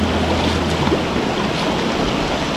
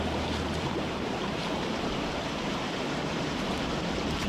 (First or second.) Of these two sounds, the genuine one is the first